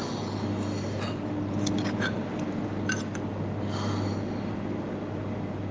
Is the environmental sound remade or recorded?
recorded